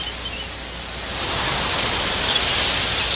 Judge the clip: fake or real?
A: real